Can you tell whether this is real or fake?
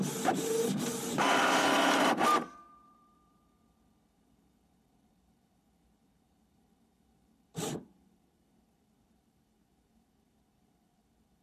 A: fake